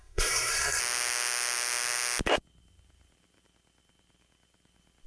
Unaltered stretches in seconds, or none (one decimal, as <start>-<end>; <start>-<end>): 0.8-5.1